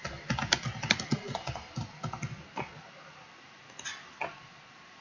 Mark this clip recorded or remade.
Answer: recorded